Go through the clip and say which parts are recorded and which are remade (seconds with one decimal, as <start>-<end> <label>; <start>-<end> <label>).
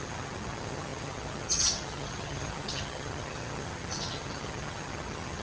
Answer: 0.0-5.4 remade